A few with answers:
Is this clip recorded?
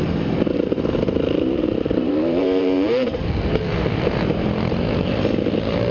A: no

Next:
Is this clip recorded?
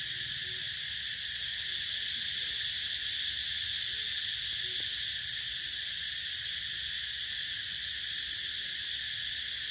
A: yes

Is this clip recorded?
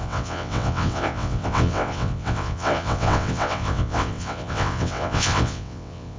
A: no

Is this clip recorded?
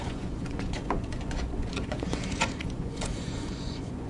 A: no